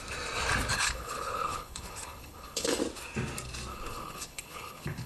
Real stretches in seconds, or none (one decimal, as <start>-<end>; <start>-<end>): 0.0-0.7; 2.8-3.7

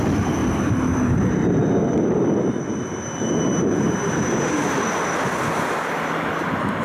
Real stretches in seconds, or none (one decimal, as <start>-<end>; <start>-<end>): 0.0-0.4; 1.3-1.8; 4.8-6.8

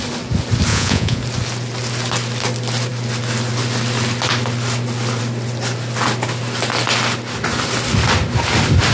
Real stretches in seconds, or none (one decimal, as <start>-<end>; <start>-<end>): 0.0-0.7; 1.2-8.9

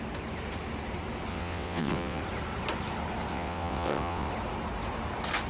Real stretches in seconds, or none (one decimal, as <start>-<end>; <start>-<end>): 0.0-1.3; 2.2-3.3; 4.3-5.5

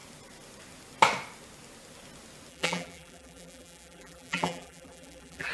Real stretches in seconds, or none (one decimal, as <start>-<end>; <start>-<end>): 0.0-2.5

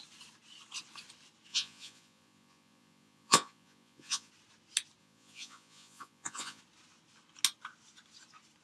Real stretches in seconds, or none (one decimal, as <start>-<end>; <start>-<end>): 0.0-1.5; 4.3-5.0; 6.6-8.6

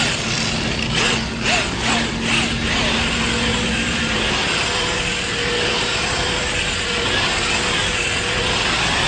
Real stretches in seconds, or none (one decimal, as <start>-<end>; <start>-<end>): 0.0-3.5; 4.0-9.1

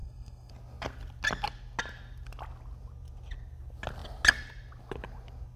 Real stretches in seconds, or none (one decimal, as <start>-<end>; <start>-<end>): 0.5-5.6